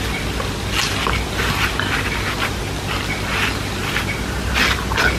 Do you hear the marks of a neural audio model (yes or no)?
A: no